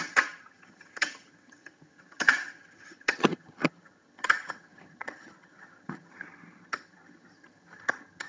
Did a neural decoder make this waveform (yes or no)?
yes